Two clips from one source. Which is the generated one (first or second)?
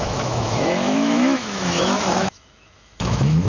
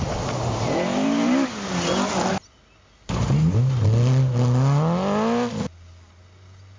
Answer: first